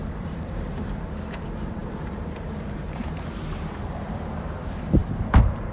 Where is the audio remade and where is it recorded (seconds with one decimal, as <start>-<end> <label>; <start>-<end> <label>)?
0.0-5.7 remade

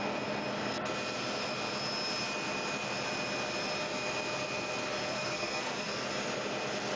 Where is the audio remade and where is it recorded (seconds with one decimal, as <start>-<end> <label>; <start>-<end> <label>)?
0.0-5.1 recorded; 5.1-6.1 remade; 6.1-7.0 recorded

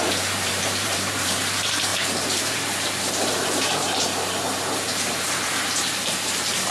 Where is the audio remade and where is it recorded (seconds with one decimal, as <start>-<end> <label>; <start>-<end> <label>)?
0.0-6.7 remade